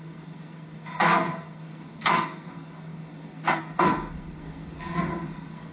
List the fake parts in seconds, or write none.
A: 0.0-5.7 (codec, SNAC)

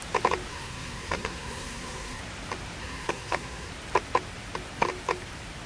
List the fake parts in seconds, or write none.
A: 0.5-2.2 (codec, SNAC); 2.8-3.7

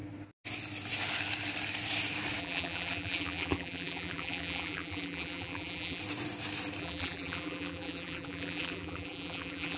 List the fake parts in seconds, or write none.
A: 2.4-6.0 (vocoder, BigVGAN v2); 6.8-9.8

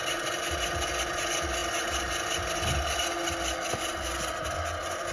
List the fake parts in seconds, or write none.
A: none

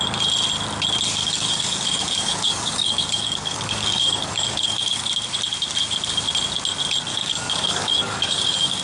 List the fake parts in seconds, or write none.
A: 1.2-5.0 (codec, DAC); 7.1-8.8

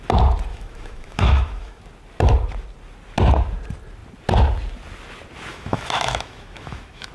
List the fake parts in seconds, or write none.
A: 0.5-1.8 (autoencoder, DAC-VAE); 5.5-7.1

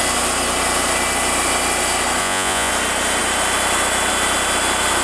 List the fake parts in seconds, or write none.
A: 2.2-2.7 (vocoder, Vocos)